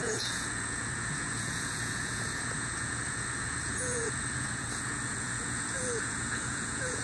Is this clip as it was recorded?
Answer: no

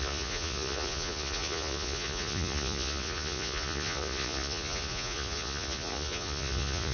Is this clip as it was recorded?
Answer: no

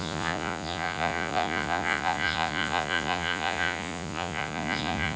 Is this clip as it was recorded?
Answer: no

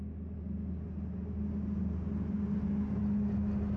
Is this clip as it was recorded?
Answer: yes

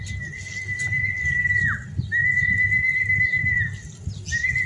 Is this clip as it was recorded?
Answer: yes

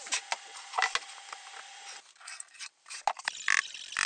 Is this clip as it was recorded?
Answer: yes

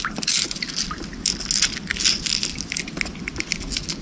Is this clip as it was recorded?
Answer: yes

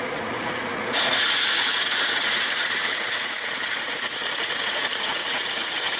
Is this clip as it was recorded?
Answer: no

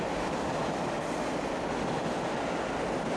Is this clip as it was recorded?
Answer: yes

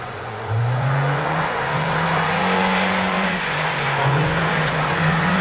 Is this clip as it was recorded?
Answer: no